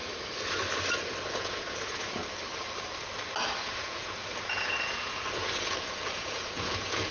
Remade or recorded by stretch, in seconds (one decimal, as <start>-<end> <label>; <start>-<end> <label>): 0.0-1.3 recorded; 1.3-2.2 remade; 2.2-3.6 recorded; 3.6-7.1 remade

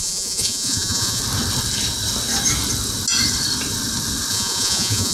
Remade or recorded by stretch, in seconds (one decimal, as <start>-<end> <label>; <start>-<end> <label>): 0.0-1.2 remade; 1.2-4.3 recorded; 4.3-5.1 remade

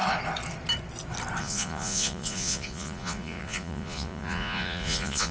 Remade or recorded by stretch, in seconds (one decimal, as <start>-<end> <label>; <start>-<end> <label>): 0.0-1.4 recorded; 1.4-5.3 remade

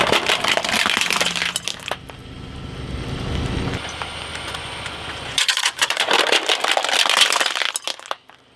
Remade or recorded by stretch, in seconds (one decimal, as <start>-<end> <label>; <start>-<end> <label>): 0.0-4.3 recorded; 4.3-6.1 remade; 6.1-8.6 recorded

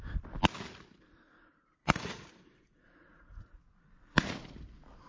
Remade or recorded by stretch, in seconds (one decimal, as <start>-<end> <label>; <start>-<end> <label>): 0.0-1.8 recorded; 1.8-3.5 remade; 3.5-5.1 recorded

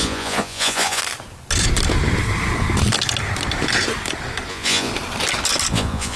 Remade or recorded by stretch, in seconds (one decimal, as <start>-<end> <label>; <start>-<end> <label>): 0.0-1.0 remade; 1.0-4.5 recorded; 4.5-4.9 remade; 4.9-5.7 recorded; 5.7-6.2 remade